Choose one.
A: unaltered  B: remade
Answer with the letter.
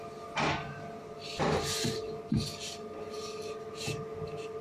A